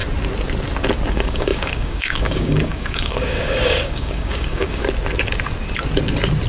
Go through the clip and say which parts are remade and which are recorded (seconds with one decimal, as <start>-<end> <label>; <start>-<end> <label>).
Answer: 0.0-1.1 recorded; 1.1-4.8 remade; 4.8-6.5 recorded